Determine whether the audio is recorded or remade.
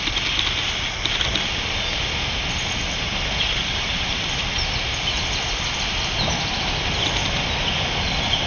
recorded